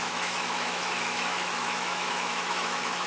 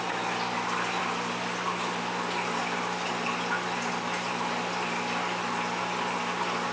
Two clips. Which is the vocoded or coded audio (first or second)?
first